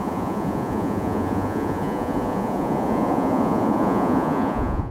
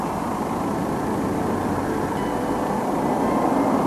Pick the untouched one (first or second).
second